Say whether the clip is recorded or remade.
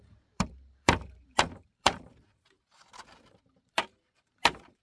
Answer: remade